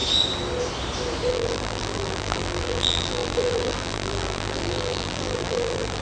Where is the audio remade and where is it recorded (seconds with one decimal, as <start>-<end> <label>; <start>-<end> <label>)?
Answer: 0.0-1.3 recorded; 1.3-6.0 remade